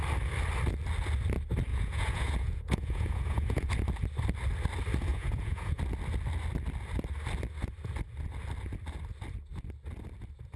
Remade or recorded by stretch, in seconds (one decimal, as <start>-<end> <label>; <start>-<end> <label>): 0.0-1.7 recorded; 1.7-3.7 remade; 3.7-5.1 recorded; 5.1-5.8 remade; 5.8-10.6 recorded